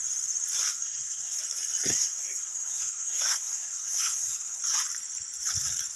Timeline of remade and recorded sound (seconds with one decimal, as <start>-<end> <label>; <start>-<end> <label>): 0.0-0.7 recorded; 0.7-1.4 remade; 1.4-1.9 recorded; 1.9-4.6 remade; 4.6-6.0 recorded

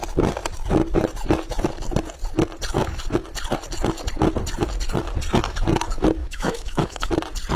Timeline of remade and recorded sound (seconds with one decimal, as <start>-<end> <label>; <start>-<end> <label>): 0.0-6.2 recorded; 6.2-7.1 remade; 7.1-7.6 recorded

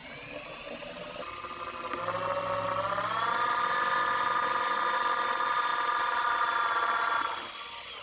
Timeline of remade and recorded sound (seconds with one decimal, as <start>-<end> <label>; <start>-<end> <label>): 0.0-8.0 recorded